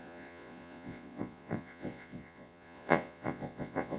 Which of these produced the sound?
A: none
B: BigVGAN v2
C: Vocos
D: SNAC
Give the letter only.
C